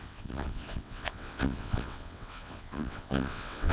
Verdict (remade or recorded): remade